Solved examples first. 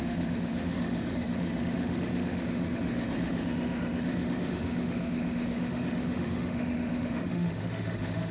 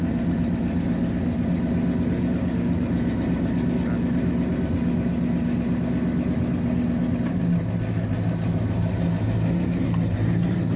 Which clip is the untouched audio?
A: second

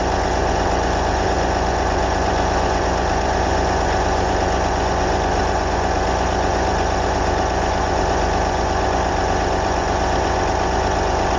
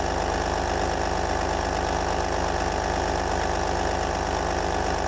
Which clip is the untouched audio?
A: second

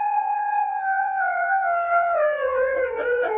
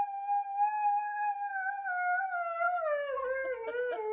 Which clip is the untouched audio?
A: second